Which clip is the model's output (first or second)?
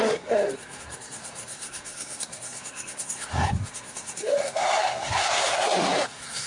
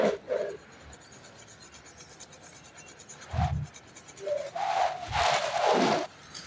first